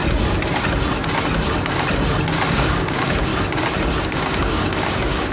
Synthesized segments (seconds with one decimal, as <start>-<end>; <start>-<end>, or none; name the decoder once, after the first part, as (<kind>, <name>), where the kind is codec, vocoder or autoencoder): 2.5-3.3 (codec, DAC); 4.0-5.3